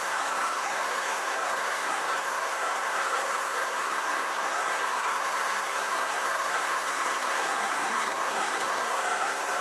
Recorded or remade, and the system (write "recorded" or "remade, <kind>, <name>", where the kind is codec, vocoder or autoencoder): remade, codec, SNAC